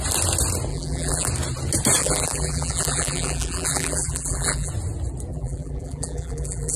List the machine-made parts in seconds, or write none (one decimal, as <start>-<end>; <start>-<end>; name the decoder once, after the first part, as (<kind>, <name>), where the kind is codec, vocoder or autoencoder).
0.7-1.3 (vocoder, BigVGAN v2); 2.0-4.7; 5.3-6.8